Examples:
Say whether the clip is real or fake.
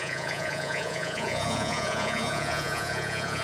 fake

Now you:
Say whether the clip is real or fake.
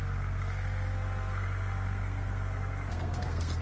fake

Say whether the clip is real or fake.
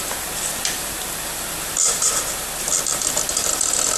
fake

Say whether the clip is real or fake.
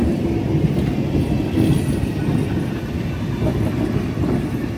real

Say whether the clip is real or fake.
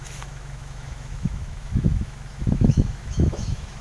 fake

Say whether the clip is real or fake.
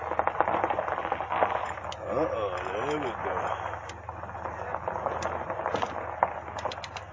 real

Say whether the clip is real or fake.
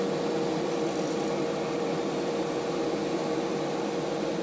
real